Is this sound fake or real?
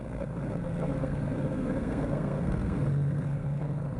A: fake